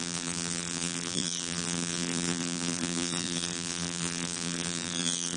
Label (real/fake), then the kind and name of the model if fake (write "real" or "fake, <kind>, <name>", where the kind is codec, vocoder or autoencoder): fake, vocoder, BigVGAN v2